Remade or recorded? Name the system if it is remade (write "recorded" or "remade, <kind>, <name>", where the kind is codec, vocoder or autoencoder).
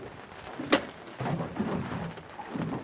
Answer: recorded